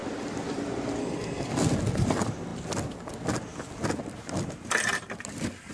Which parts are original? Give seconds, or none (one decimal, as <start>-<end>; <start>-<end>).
0.0-1.0; 1.5-5.7